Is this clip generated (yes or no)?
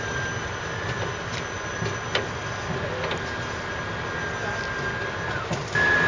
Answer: no